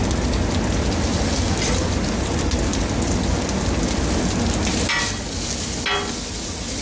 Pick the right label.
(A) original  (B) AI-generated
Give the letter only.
A